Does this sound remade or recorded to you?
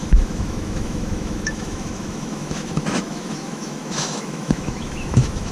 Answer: remade